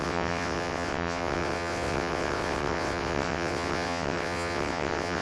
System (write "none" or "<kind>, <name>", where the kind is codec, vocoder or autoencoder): vocoder, WaveNeXt